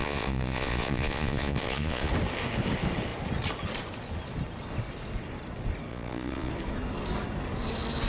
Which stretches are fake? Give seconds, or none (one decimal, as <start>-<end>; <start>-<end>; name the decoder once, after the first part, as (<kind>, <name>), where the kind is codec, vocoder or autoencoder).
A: 0.0-2.1 (vocoder, Vocos); 5.9-6.5